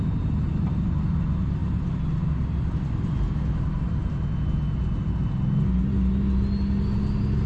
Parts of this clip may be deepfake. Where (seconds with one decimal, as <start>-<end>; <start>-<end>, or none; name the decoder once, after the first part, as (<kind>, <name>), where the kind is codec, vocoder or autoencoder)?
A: 0.0-1.6 (vocoder, BigVGAN v2); 3.6-4.0